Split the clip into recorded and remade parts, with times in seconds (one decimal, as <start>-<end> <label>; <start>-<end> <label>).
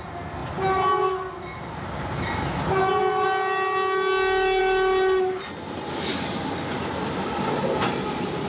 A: 0.0-8.5 recorded